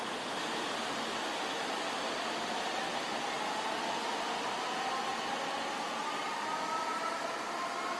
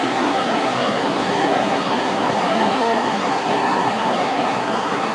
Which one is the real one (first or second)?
first